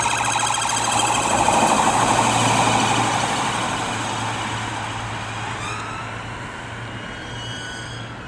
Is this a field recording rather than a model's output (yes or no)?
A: yes